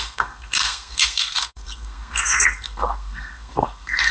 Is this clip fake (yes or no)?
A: yes